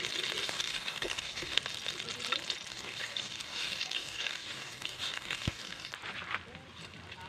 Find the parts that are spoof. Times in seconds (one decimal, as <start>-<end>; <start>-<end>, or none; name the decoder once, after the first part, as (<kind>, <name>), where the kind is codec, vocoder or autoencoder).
0.4-1.6 (codec, DAC); 2.7-5.9